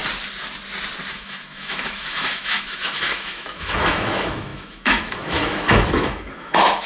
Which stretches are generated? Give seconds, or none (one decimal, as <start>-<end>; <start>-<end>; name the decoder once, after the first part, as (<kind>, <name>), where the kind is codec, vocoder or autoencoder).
1.1-6.9 (autoencoder, DAC-VAE)